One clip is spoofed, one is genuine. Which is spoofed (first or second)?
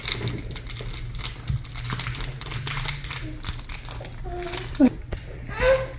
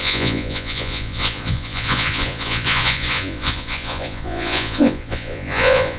second